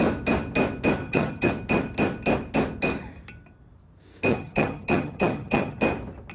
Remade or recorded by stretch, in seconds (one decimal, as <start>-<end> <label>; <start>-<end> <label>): 0.0-1.0 recorded; 1.0-1.5 remade; 1.5-4.3 recorded; 4.3-5.8 remade; 5.8-6.3 recorded